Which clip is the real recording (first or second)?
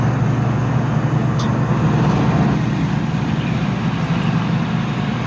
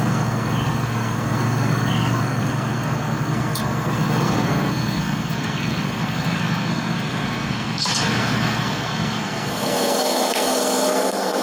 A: first